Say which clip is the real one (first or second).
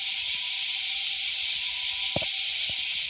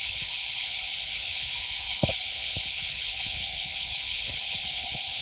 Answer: first